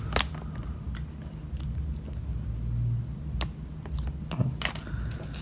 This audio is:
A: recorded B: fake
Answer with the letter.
A